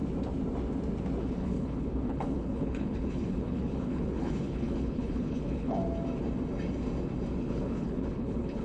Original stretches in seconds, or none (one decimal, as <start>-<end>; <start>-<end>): 0.0-1.2; 5.8-7.4